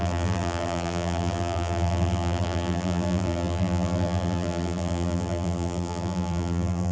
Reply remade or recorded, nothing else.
remade